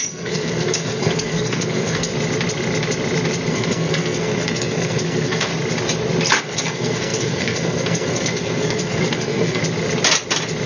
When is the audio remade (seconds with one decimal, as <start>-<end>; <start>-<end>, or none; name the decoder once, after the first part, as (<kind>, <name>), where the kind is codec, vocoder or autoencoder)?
0.0-2.1 (codec, SNAC); 3.5-5.5; 6.4-9.6